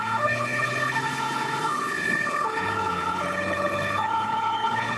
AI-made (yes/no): yes